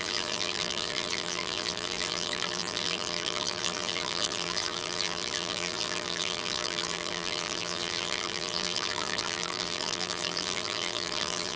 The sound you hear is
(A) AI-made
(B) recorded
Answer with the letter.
A